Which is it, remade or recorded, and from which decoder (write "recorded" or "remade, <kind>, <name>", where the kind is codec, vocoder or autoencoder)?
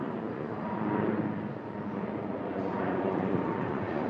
remade, vocoder, Vocos